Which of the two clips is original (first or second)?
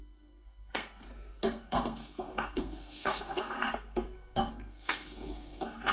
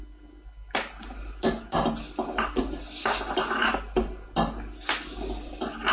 second